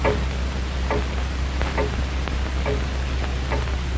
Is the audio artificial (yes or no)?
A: no